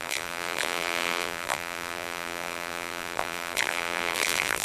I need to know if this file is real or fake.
fake